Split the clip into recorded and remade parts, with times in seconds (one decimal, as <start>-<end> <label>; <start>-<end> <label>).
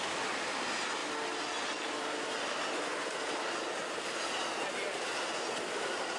0.0-6.2 recorded